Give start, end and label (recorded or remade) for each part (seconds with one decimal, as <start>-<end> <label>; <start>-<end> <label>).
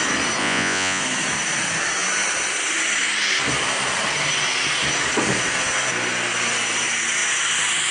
0.0-0.4 recorded; 0.4-1.0 remade; 1.0-7.9 recorded